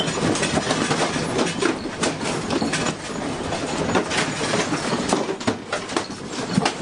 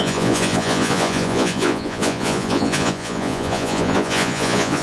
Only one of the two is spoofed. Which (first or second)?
second